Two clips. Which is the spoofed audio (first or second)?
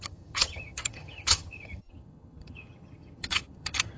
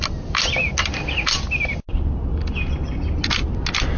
first